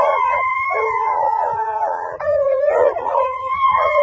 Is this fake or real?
fake